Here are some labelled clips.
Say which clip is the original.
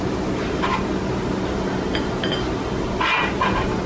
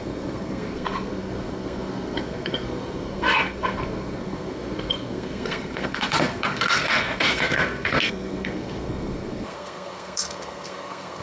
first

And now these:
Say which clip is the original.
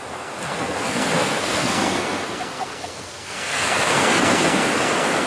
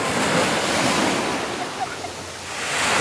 second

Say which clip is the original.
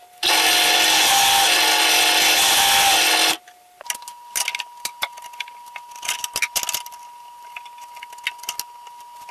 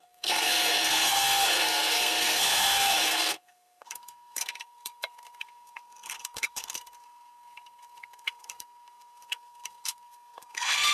first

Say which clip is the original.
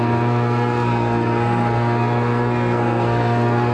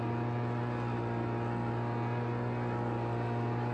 second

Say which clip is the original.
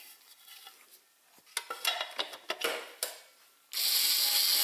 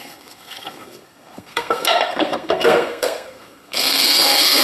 first